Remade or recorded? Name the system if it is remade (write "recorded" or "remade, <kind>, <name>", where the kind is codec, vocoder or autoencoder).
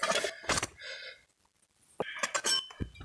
recorded